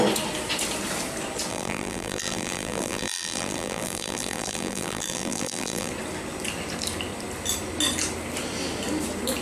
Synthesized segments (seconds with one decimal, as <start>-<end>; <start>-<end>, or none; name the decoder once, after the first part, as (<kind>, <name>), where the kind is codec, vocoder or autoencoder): 1.5-5.9 (vocoder, BigVGAN v2)